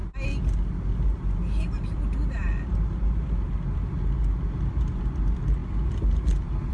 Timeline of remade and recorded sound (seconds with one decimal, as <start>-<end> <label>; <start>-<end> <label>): 0.0-6.7 recorded